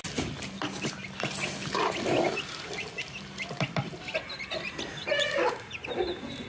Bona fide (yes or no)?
yes